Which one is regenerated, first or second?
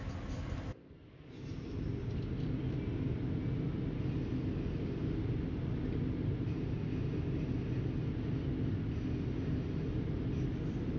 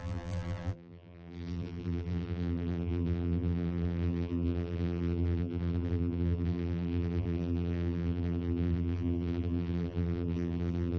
second